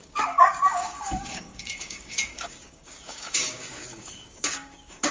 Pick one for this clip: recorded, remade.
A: remade